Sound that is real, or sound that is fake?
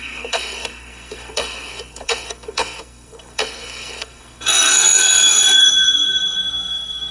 fake